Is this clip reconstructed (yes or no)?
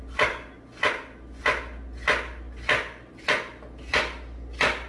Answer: no